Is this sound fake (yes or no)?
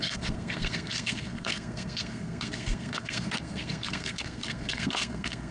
yes